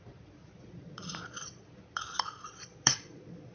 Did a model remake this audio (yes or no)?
yes